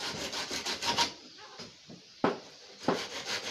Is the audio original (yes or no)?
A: no